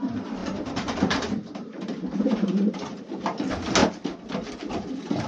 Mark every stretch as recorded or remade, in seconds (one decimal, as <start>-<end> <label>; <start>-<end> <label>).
0.0-0.4 recorded; 0.4-3.0 remade; 3.0-5.3 recorded